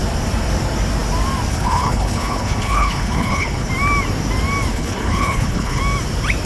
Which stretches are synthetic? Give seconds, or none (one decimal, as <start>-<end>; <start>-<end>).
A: 1.5-3.7; 4.7-5.8